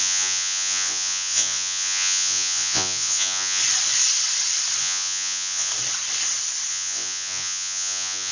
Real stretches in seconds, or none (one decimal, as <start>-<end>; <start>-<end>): 3.6-4.8; 5.7-6.7